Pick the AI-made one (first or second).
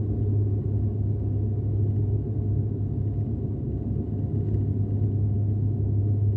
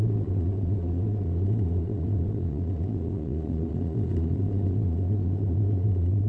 second